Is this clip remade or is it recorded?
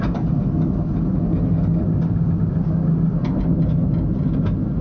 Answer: recorded